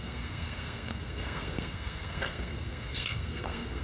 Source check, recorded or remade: remade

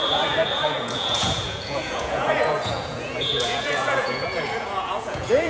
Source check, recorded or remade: remade